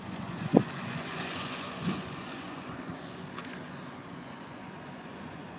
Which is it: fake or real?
fake